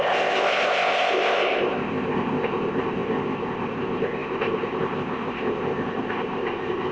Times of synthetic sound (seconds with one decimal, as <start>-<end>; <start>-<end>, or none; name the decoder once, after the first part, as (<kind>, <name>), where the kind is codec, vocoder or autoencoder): 0.0-6.9 (codec, ZipCodec)

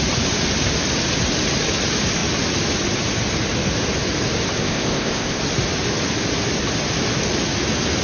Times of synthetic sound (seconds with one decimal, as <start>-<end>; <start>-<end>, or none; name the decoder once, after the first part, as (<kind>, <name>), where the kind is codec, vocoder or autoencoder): 4.6-5.4 (codec, ZipCodec)

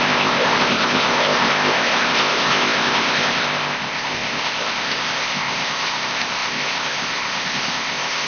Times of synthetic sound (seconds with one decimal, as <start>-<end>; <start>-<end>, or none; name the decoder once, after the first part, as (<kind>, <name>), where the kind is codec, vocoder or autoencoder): 0.0-8.3 (codec, ZipCodec)

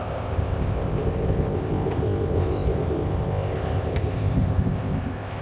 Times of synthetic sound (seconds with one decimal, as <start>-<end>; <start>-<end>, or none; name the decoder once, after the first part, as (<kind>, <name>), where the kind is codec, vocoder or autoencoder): 0.0-5.4 (codec, ZipCodec)

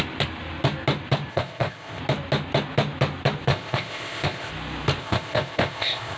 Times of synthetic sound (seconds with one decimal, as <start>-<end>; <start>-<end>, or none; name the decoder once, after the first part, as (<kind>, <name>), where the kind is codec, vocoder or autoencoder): 1.3-2.0 (codec, ZipCodec); 3.5-4.5; 5.0-6.2

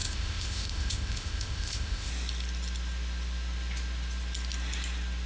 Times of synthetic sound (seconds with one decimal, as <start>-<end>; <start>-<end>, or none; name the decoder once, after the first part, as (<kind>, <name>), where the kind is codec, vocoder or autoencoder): 0.0-2.1 (codec, ZipCodec)

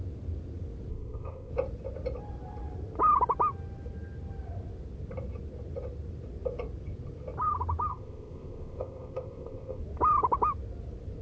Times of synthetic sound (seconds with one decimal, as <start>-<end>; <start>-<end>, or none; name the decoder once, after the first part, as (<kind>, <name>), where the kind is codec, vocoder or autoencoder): 0.9-1.5 (codec, ZipCodec); 7.9-9.8

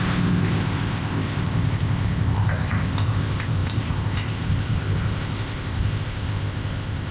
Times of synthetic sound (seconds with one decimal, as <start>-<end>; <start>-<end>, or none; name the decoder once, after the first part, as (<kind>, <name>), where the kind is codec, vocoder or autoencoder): 0.0-7.1 (codec, ZipCodec)